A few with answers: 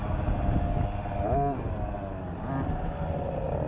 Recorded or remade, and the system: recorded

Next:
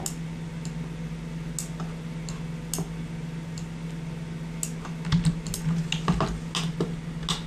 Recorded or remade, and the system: recorded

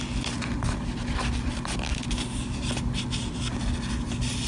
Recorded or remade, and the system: recorded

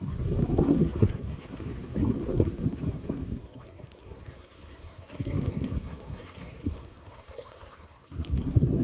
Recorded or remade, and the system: remade, codec, SNAC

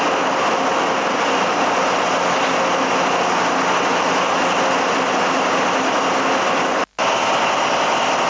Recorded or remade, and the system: recorded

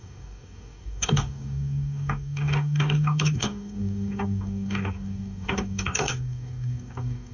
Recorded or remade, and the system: remade, codec, DAC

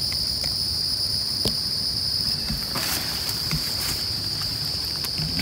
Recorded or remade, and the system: remade, vocoder, BigVGAN v2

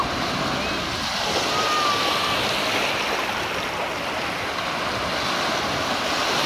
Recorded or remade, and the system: recorded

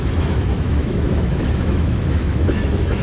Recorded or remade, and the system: remade, autoencoder, DAC-VAE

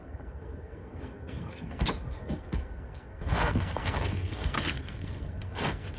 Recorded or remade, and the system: remade, codec, SNAC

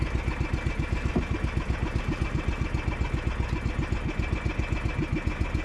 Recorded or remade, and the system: recorded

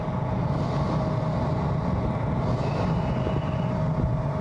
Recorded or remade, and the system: recorded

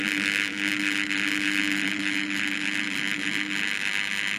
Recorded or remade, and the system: recorded